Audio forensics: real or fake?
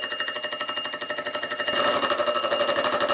real